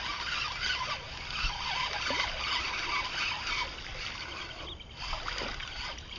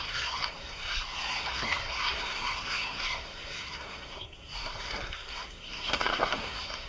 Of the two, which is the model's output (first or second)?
second